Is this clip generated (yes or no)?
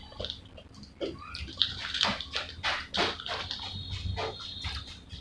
yes